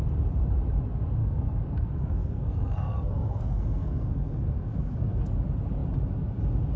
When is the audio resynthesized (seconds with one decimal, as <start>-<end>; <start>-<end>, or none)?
1.2-5.3